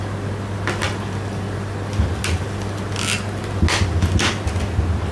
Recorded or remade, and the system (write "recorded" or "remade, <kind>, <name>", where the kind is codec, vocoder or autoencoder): recorded